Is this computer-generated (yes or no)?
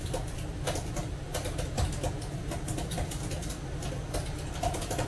no